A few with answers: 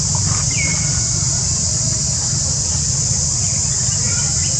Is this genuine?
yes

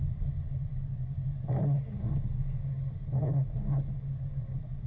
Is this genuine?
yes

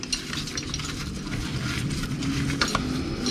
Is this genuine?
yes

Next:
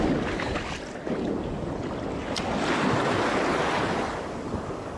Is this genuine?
yes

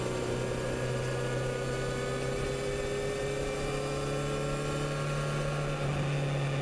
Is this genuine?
yes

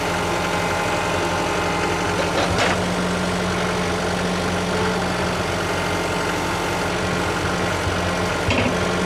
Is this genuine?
yes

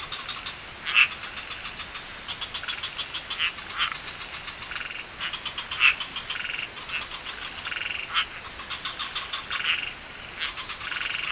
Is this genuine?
yes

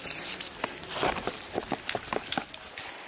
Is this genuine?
yes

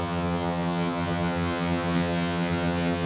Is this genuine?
no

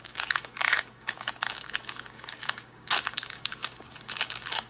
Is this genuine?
no